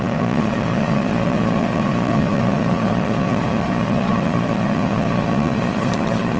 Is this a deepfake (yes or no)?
yes